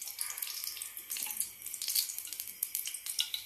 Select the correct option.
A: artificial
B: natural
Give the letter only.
B